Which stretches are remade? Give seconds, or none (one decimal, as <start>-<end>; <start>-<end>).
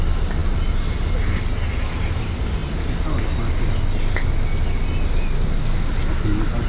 none